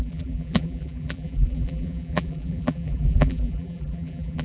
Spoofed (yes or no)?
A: yes